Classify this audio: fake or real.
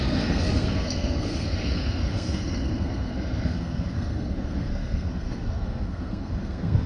fake